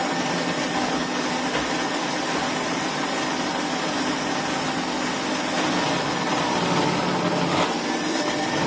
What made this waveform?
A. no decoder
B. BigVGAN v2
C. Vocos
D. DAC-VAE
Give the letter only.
A